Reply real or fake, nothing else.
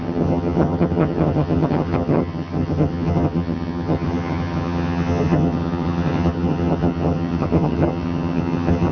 fake